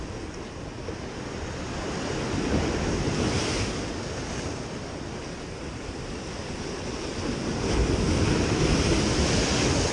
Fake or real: real